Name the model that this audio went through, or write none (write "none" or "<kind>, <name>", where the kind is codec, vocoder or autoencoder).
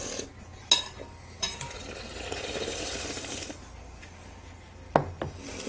none